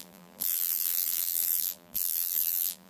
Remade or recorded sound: remade